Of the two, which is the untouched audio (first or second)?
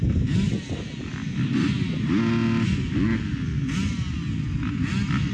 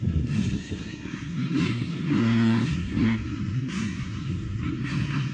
first